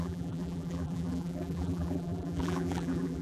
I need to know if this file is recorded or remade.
remade